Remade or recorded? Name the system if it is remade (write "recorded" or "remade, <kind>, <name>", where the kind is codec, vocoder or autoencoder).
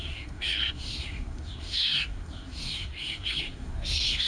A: remade, codec, SNAC